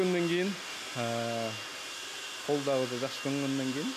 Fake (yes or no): no